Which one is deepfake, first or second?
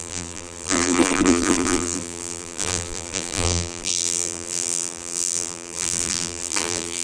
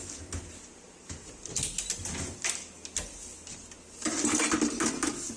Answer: first